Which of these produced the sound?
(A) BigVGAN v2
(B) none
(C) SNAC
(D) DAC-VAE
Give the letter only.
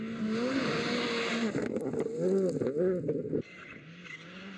B